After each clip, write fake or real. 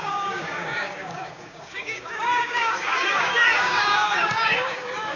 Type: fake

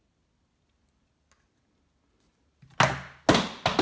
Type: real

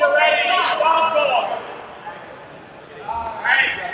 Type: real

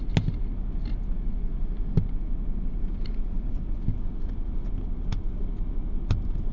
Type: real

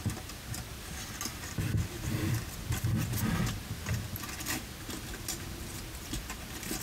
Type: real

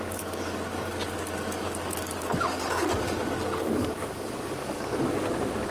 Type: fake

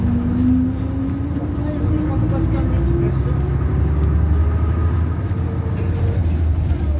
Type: real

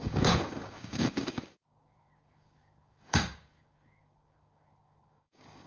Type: fake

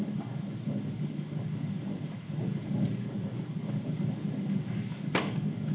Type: fake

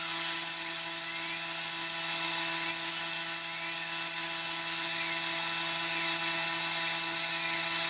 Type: real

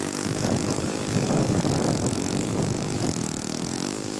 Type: fake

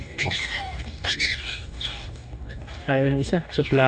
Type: fake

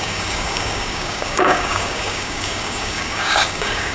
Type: fake